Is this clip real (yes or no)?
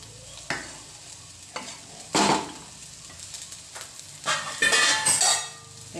yes